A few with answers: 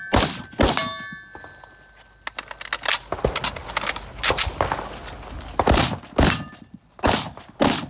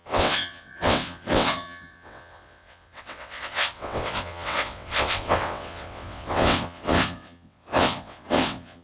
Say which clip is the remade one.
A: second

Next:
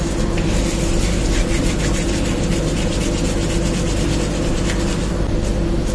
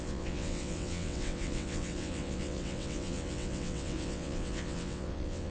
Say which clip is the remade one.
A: second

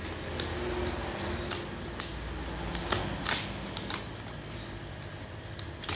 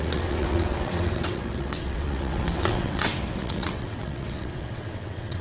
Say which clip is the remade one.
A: second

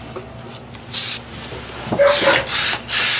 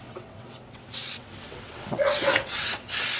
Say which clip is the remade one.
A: second